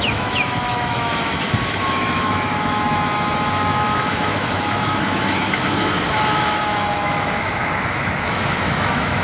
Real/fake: fake